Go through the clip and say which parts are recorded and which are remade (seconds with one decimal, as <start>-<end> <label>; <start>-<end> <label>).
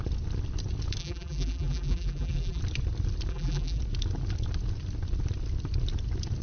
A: 0.0-1.0 recorded; 1.0-2.6 remade; 2.6-3.3 recorded; 3.3-3.8 remade; 3.8-6.4 recorded